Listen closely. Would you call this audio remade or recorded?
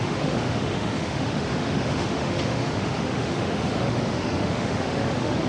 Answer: remade